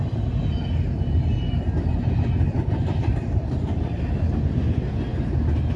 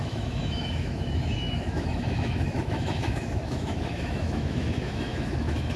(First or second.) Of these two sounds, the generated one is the second